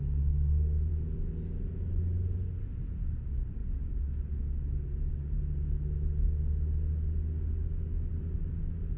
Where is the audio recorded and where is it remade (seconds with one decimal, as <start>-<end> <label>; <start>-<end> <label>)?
0.0-9.0 recorded